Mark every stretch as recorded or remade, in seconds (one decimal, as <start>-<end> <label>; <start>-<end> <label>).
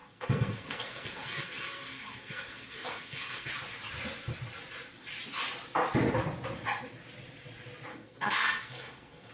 0.0-3.5 remade; 3.5-7.9 recorded; 7.9-9.3 remade